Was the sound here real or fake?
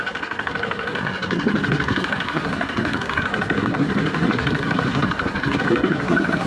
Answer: fake